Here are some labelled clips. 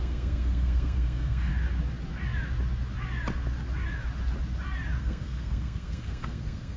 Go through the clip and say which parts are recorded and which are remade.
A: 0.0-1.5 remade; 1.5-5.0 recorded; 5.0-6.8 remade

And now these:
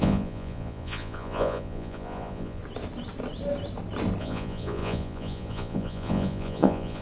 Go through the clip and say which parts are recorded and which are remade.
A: 0.0-2.6 remade; 2.6-4.2 recorded; 4.2-7.0 remade

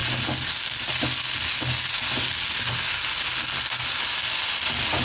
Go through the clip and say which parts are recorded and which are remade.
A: 0.0-5.0 recorded

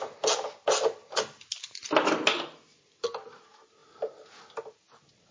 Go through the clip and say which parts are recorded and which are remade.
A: 0.0-5.3 recorded

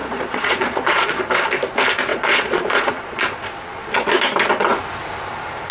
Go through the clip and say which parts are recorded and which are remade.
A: 0.0-1.2 remade; 1.2-2.1 recorded; 2.1-4.1 remade; 4.1-5.7 recorded

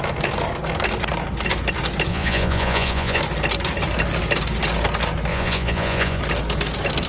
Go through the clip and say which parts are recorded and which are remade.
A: 0.0-2.1 recorded; 2.1-3.2 remade; 3.2-5.3 recorded; 5.3-6.2 remade; 6.2-7.1 recorded

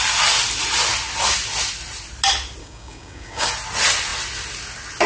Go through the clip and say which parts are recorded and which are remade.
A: 0.0-2.6 recorded; 2.6-3.5 remade; 3.5-5.1 recorded